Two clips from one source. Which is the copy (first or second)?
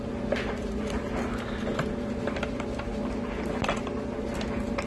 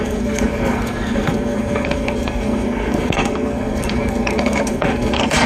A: second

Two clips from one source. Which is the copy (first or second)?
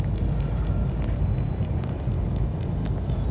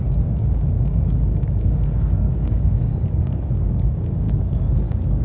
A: second